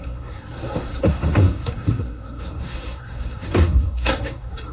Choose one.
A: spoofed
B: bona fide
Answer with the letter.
A